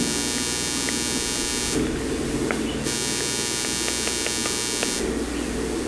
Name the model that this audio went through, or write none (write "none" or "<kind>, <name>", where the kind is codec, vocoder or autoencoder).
none